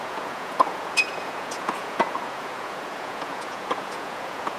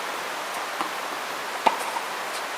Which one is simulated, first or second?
first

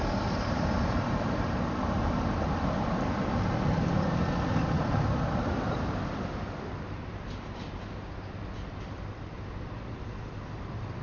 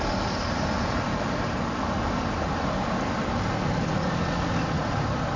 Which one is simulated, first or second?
first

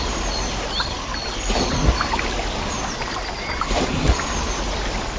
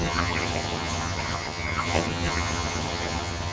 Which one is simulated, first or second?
second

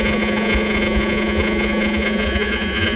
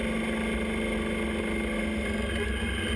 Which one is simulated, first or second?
first